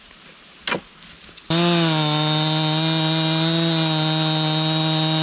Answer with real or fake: real